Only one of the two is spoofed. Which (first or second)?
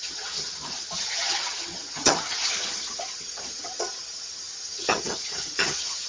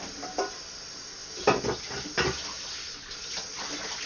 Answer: first